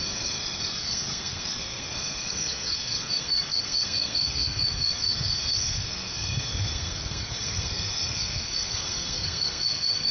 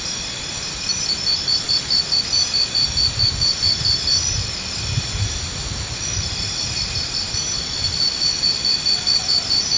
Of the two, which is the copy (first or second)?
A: first